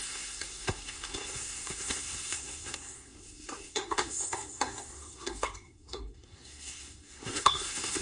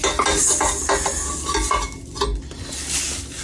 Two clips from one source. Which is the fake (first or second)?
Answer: first